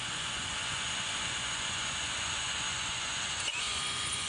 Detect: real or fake fake